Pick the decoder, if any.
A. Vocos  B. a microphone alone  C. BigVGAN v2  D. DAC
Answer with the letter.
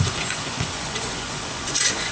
A